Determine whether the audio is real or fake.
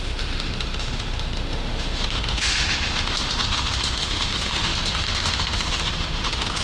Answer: fake